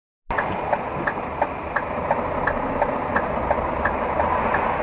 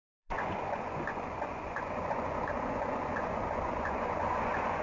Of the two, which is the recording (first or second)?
first